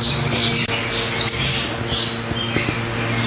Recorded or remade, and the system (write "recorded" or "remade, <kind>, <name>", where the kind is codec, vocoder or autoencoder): recorded